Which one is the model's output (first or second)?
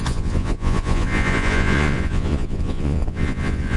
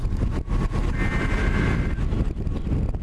first